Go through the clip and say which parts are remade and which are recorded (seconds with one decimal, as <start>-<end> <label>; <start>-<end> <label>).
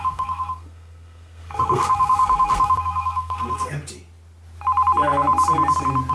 0.0-3.7 remade; 3.7-6.1 recorded